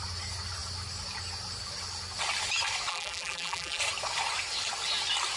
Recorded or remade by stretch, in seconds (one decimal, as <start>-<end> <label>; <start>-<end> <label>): 0.0-2.9 recorded; 2.9-3.8 remade; 3.8-5.4 recorded